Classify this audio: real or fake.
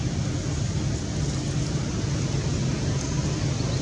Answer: real